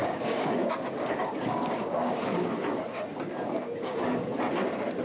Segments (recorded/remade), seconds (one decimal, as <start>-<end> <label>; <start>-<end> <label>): 0.0-2.5 remade; 2.5-3.3 recorded; 3.3-4.3 remade; 4.3-5.0 recorded